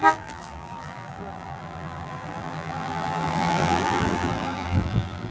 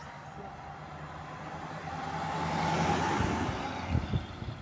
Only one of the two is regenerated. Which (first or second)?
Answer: first